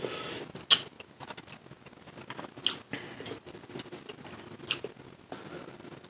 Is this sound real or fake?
real